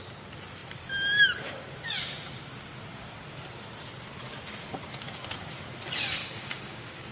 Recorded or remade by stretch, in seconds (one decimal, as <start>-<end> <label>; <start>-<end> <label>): 0.0-6.2 recorded; 6.2-7.1 remade